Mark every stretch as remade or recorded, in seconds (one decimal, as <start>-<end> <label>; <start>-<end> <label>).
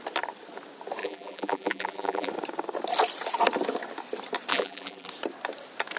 0.0-1.0 recorded; 1.0-2.3 remade; 2.3-4.5 recorded; 4.5-5.1 remade; 5.1-6.0 recorded